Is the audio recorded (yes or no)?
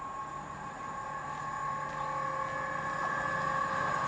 yes